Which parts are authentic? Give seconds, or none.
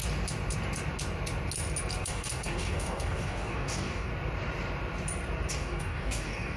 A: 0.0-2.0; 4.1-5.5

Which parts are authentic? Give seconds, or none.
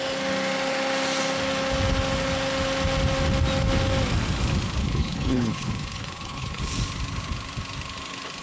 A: 0.0-4.8; 6.6-8.4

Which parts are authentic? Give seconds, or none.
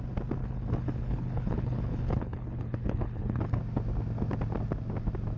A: 0.0-0.4; 3.6-5.4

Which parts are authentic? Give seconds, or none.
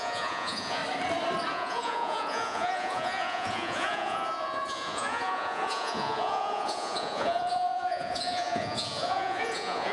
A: 0.8-1.5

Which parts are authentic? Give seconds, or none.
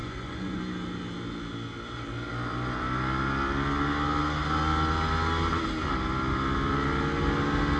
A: 0.6-7.8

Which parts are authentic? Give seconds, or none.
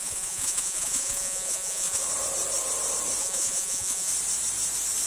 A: 2.0-3.2; 4.1-5.1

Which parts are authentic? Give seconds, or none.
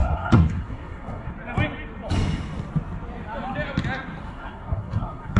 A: 1.3-4.2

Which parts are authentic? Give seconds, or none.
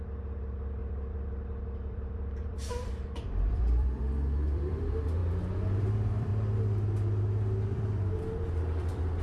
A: 5.2-5.8; 6.3-7.7